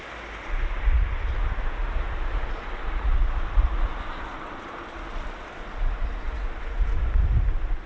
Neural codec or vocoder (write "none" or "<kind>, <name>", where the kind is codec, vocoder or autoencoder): none